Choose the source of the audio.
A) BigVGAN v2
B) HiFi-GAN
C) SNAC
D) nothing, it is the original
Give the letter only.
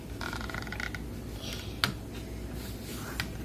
D